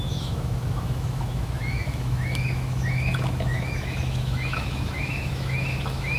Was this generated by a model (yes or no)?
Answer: yes